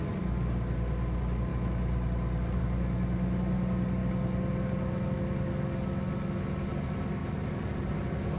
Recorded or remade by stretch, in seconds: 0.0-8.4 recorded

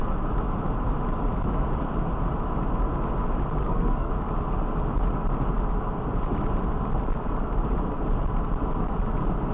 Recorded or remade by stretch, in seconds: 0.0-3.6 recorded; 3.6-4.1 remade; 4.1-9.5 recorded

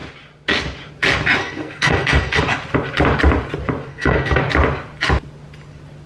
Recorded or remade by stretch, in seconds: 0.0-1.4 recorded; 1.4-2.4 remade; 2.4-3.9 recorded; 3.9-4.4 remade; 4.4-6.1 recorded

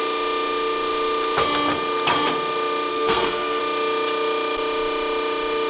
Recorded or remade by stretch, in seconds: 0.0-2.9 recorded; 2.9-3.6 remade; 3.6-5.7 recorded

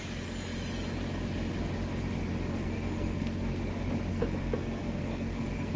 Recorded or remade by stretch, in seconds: 0.0-2.5 recorded; 2.5-3.6 remade; 3.6-4.1 recorded; 4.1-5.8 remade

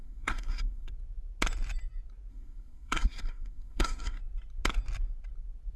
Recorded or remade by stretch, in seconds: 0.0-0.9 remade; 0.9-2.3 recorded; 2.3-4.2 remade; 4.2-5.8 recorded